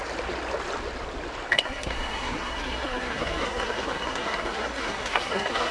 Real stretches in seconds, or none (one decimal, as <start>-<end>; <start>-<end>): 0.0-1.5

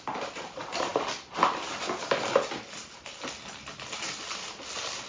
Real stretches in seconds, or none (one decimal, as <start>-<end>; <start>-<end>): 0.0-5.1

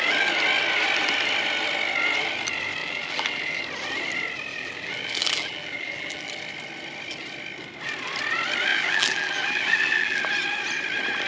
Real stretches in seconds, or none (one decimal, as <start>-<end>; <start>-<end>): 0.0-2.8; 3.6-4.5; 6.3-8.7; 10.2-11.3

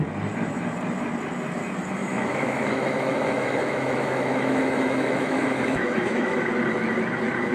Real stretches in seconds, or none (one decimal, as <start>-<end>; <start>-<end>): 0.0-2.0; 6.5-7.5